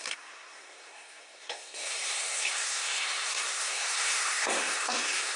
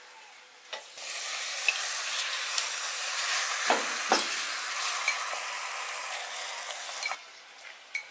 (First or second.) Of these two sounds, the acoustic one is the second